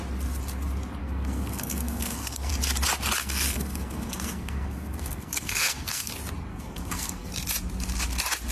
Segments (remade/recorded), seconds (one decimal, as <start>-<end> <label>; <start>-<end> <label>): 0.0-1.0 recorded; 1.0-2.5 remade; 2.5-3.2 recorded; 3.2-6.1 remade; 6.1-6.5 recorded; 6.5-7.3 remade; 7.3-8.5 recorded

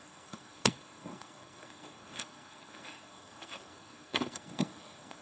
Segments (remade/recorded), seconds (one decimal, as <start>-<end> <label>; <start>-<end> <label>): 0.0-5.2 remade

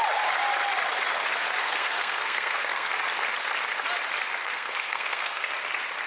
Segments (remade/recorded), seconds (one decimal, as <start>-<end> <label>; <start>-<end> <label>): 0.0-1.6 recorded; 1.6-2.9 remade; 2.9-4.4 recorded; 4.4-5.5 remade; 5.5-6.1 recorded

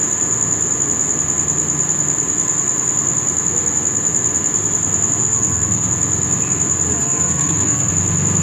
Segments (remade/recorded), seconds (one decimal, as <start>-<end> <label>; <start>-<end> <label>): 0.0-5.2 recorded; 5.2-5.9 remade; 5.9-6.9 recorded; 6.9-7.9 remade; 7.9-8.4 recorded

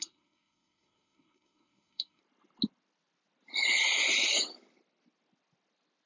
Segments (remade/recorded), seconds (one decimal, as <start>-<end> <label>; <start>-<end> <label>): 0.0-2.2 remade; 2.2-6.1 recorded

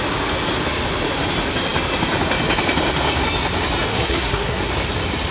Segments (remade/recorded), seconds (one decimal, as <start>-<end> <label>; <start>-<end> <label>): 0.0-3.9 recorded; 3.9-4.7 remade; 4.7-5.3 recorded

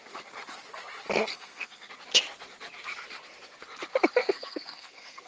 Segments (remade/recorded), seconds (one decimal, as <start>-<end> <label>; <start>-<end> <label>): 0.0-1.3 recorded; 1.3-1.9 remade; 1.9-4.2 recorded; 4.2-5.3 remade